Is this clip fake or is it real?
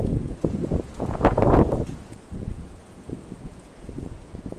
fake